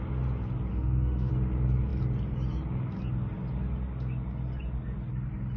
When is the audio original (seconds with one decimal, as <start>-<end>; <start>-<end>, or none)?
0.0-0.7; 1.3-5.6